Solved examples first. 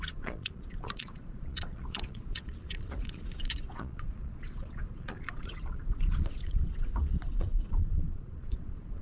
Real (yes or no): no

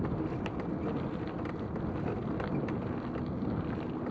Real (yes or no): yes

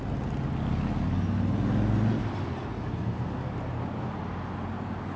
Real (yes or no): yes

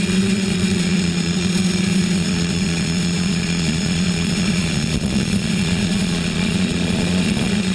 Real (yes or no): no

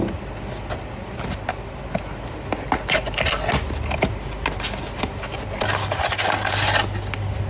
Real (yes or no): yes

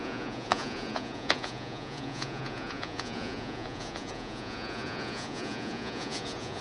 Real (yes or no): no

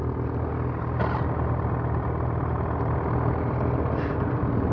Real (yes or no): yes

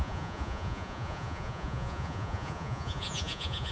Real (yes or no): no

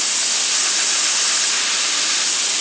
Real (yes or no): yes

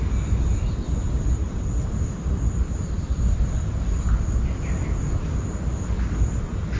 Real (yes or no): yes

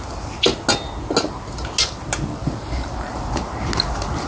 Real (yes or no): yes